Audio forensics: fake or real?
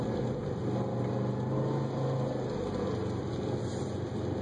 real